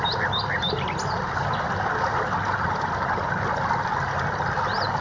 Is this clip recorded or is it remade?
recorded